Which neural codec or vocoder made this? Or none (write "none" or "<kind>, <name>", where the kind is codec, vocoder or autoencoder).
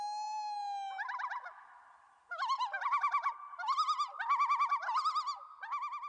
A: none